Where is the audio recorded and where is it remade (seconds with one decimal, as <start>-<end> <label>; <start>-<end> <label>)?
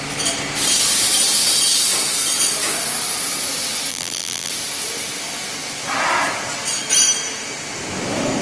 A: 0.0-3.9 recorded; 3.9-4.5 remade; 4.5-8.4 recorded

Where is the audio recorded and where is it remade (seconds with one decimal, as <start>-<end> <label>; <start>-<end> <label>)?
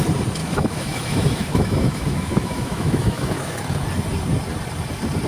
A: 0.0-0.4 recorded; 0.4-3.6 remade; 3.6-5.3 recorded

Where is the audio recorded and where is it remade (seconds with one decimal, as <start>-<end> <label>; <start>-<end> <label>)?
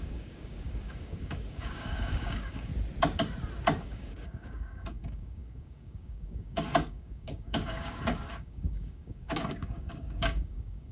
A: 0.0-2.7 remade; 2.7-3.8 recorded; 3.8-10.9 remade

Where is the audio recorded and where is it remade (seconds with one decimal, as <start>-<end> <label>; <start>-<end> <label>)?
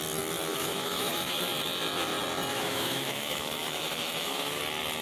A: 0.0-0.6 recorded; 0.6-1.4 remade; 1.4-2.5 recorded; 2.5-4.6 remade; 4.6-5.0 recorded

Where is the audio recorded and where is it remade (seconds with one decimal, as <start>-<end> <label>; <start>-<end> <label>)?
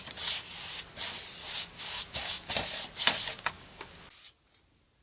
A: 0.0-1.4 recorded; 1.4-2.5 remade; 2.5-3.2 recorded; 3.2-3.8 remade; 3.8-5.0 recorded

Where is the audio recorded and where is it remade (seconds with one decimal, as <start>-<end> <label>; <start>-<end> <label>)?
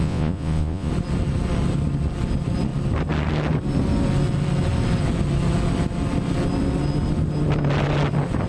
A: 0.0-0.9 remade; 0.9-8.5 recorded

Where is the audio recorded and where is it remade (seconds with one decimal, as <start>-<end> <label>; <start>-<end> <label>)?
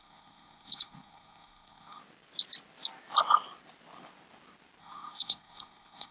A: 0.0-2.0 remade; 2.0-4.8 recorded; 4.8-6.1 remade